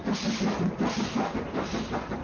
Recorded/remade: recorded